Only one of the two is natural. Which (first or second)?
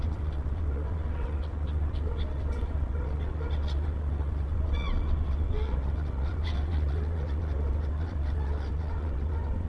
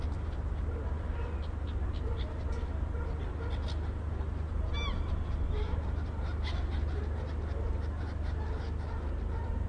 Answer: second